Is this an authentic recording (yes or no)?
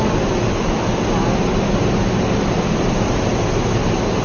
yes